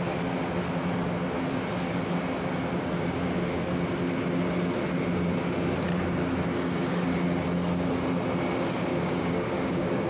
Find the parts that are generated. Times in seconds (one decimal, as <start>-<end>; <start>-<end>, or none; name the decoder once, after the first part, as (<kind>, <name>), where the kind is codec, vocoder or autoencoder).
8.9-10.1 (codec, DAC)